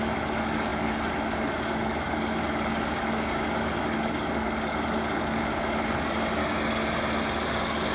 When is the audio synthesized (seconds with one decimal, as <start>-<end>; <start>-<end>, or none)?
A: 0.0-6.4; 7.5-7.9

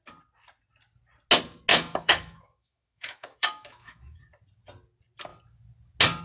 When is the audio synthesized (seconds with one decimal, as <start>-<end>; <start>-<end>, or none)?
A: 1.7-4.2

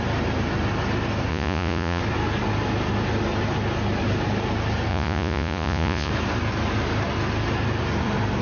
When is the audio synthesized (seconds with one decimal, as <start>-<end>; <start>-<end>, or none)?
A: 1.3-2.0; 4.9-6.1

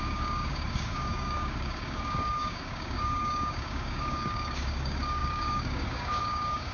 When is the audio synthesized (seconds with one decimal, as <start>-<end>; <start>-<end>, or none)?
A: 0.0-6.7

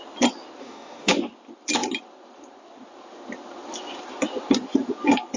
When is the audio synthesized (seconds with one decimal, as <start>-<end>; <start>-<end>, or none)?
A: 0.6-1.1